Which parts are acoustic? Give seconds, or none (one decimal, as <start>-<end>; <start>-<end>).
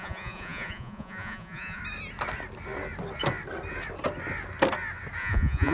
1.8-5.2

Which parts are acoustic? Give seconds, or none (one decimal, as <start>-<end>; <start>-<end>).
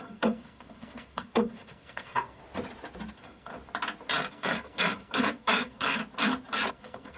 2.4-3.1; 3.5-4.3; 6.0-6.7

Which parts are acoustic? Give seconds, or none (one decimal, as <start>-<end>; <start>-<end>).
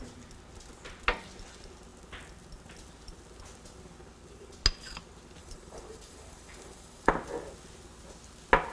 0.0-5.4; 7.1-8.7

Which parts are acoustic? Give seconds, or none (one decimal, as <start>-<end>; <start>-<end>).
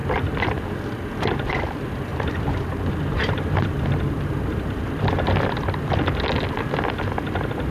0.8-2.1; 5.1-7.7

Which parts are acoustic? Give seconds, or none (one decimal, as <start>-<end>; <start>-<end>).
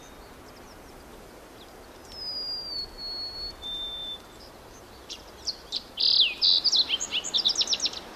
0.0-1.1; 1.6-4.0; 5.9-8.2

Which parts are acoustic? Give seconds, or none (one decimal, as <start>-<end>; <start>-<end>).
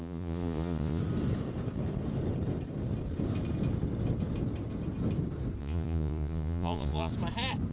1.0-5.6; 7.1-7.7